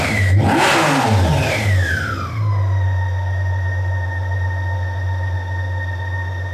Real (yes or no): yes